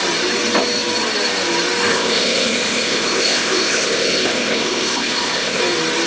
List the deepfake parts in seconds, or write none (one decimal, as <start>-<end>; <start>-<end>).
1.9-5.6